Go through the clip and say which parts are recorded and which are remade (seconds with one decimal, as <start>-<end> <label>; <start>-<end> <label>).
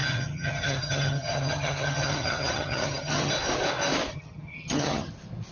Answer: 0.0-3.3 remade; 3.3-4.1 recorded; 4.1-5.1 remade; 5.1-5.5 recorded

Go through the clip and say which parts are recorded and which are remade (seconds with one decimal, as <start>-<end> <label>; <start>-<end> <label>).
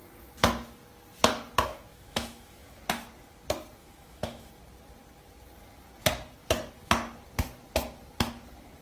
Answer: 0.0-1.9 recorded; 1.9-2.8 remade; 2.8-3.8 recorded; 3.8-4.5 remade; 4.5-8.8 recorded